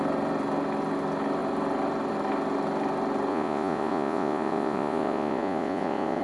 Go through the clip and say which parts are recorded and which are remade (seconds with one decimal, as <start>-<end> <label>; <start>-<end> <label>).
0.0-3.3 recorded; 3.3-6.2 remade